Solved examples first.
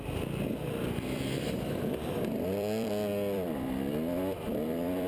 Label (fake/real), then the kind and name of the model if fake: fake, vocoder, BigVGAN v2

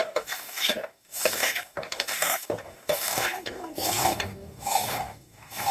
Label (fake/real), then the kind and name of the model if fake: fake, codec, DAC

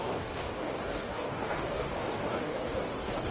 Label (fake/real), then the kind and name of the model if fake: fake, codec, DAC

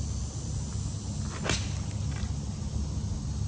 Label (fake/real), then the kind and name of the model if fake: real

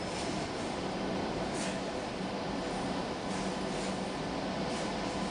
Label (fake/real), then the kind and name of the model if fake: real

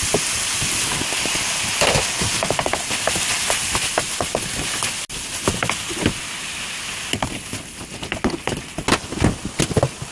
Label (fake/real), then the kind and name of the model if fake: real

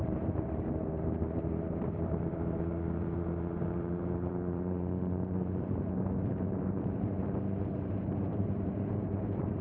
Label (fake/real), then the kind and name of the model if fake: fake, vocoder, BigVGAN v2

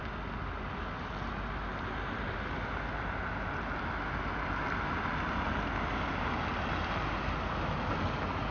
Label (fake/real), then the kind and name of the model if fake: real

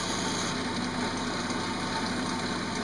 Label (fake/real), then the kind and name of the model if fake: real